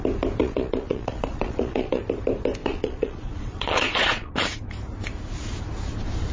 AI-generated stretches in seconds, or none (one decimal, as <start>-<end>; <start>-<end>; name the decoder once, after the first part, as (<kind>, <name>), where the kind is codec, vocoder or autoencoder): 0.4-2.0 (vocoder, Vocos); 2.6-4.3